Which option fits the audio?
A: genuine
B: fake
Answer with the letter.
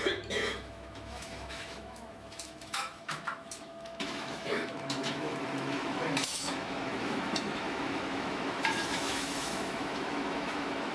B